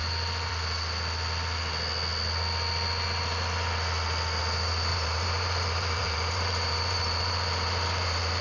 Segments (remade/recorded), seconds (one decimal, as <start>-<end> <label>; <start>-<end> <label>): 0.0-4.9 recorded; 4.9-8.4 remade